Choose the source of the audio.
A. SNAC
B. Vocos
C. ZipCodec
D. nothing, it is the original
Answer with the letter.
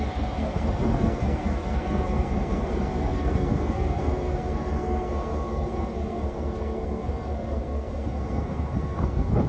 A